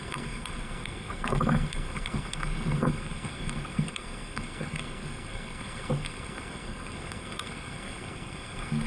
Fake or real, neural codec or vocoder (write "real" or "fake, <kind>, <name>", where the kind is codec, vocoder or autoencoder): fake, codec, SNAC